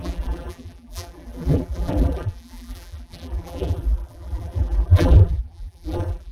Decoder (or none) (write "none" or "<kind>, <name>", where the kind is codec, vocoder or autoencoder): vocoder, BigVGAN v2